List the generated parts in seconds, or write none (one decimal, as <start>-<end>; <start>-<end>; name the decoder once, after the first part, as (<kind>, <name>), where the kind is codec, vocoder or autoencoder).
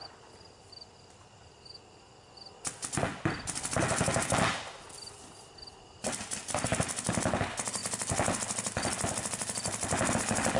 none